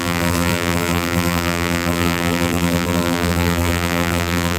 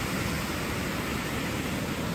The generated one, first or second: first